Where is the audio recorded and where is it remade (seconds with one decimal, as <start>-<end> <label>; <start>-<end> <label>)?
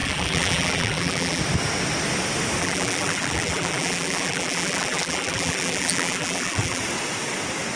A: 0.0-1.4 remade; 1.4-2.6 recorded; 2.6-6.8 remade; 6.8-7.7 recorded